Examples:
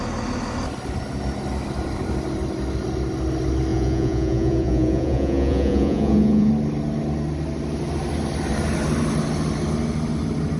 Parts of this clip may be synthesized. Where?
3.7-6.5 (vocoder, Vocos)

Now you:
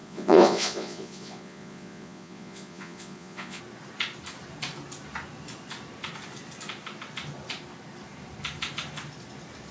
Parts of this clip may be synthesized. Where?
0.0-3.6 (vocoder, Vocos)

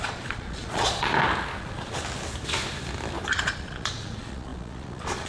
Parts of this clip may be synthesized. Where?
0.0-1.1 (vocoder, Vocos); 1.6-2.0; 3.3-5.3

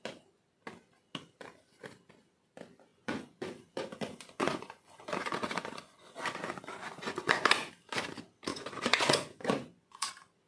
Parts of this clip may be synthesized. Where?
2.9-7.7 (vocoder, Vocos); 8.5-10.1

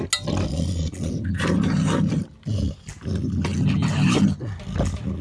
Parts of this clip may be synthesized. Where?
0.5-1.1 (vocoder, Vocos)